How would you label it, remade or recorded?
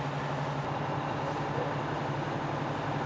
recorded